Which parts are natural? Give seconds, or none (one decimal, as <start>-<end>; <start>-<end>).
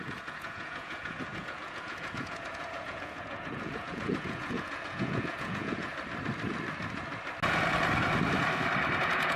5.9-9.0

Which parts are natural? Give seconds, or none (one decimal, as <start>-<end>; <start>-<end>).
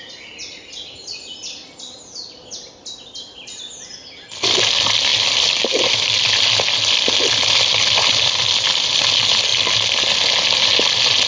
0.0-11.3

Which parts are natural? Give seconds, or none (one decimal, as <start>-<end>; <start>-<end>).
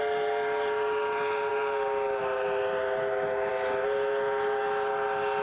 0.0-5.4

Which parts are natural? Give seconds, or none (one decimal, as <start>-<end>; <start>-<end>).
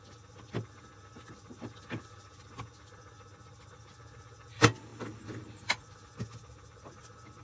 0.0-7.4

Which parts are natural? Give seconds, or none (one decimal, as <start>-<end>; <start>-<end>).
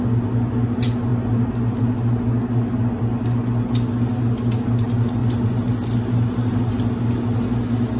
0.0-8.0